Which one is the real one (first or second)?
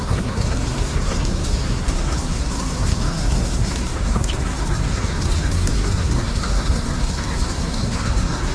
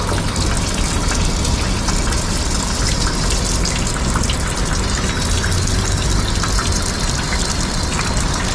second